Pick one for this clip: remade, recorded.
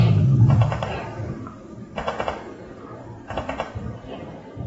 remade